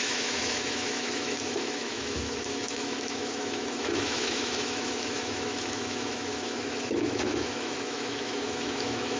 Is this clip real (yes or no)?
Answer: no